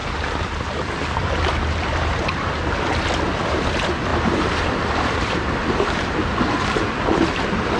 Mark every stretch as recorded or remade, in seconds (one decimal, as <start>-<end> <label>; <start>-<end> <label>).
0.0-2.6 remade; 2.6-4.1 recorded; 4.1-7.3 remade; 7.3-7.8 recorded